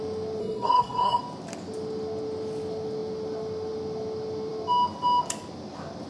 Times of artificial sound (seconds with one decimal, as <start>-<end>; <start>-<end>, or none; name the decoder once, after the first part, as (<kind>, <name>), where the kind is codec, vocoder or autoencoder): 0.4-1.2 (codec, SNAC)